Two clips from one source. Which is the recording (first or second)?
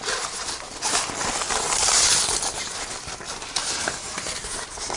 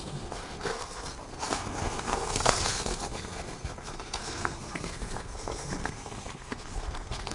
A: first